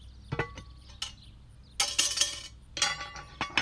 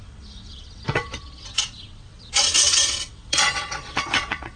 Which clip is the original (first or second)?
first